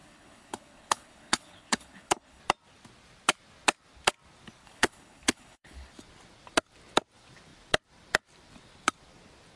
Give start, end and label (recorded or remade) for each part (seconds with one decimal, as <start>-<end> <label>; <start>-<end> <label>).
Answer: 0.0-2.4 remade; 2.4-4.6 recorded; 4.6-5.9 remade; 5.9-9.6 recorded